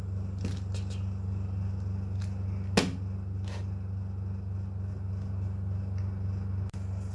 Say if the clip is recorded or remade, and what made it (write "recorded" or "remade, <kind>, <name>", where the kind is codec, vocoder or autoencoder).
recorded